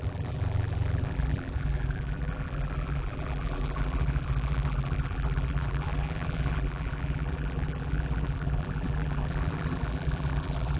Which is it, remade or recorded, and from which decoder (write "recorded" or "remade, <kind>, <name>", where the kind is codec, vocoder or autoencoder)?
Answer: remade, vocoder, BigVGAN v2